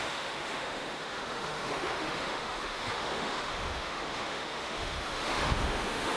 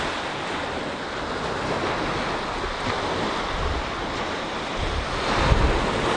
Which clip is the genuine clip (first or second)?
second